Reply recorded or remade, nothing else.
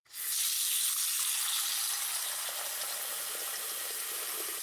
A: recorded